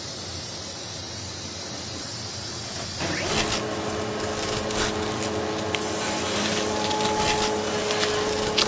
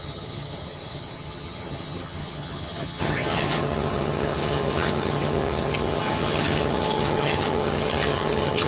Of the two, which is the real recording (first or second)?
first